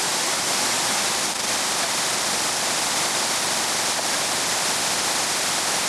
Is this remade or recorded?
recorded